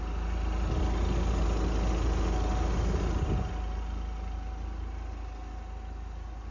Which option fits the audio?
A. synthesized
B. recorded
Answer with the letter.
B